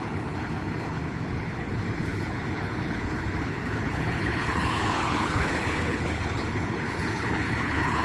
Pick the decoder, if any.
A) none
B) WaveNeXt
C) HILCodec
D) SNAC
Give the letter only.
C